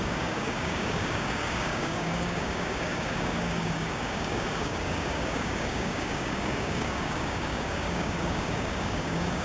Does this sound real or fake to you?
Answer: fake